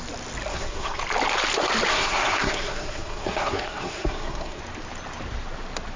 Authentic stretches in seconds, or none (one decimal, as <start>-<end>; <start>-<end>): 0.0-0.5; 1.0-1.9; 4.6-6.0